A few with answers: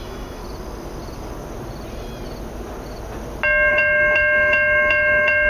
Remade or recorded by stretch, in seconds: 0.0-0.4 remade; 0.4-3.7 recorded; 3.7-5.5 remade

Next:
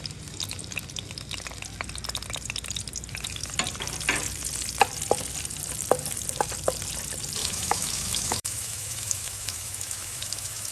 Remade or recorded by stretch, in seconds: 0.0-7.4 recorded; 7.4-10.7 remade

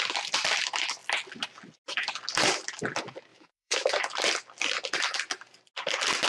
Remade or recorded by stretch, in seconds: 0.0-3.3 recorded; 3.3-3.9 remade; 3.9-6.3 recorded

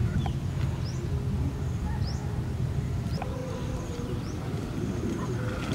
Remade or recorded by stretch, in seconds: 0.0-5.7 recorded

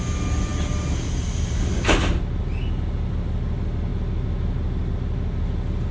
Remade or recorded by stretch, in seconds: 0.0-5.9 recorded

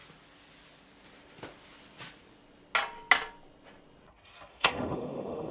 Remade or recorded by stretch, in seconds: 0.0-4.5 recorded; 4.5-5.5 remade